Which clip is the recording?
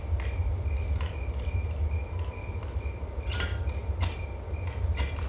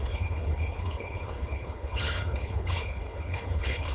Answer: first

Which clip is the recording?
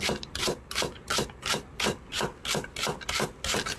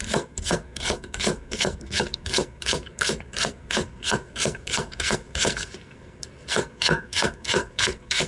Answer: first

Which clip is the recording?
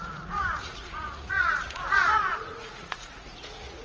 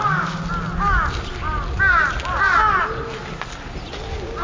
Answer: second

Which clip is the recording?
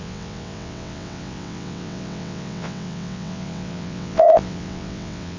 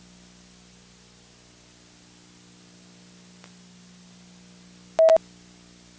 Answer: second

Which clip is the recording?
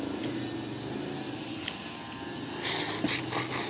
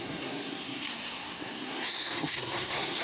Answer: first